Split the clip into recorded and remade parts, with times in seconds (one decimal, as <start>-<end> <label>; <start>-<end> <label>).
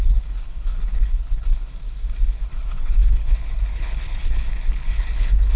0.0-1.7 remade; 1.7-2.4 recorded; 2.4-5.6 remade